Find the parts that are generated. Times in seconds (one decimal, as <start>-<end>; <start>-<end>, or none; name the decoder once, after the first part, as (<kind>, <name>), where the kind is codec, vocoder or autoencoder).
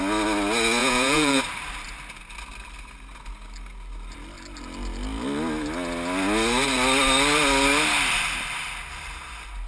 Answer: 0.8-1.4 (vocoder, Vocos)